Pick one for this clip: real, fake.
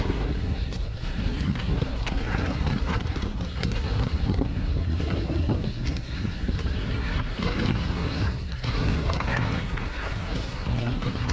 fake